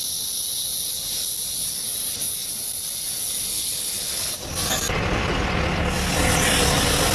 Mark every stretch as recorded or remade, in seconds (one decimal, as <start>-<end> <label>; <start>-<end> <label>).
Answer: 0.0-3.5 recorded; 3.5-4.3 remade; 4.3-7.1 recorded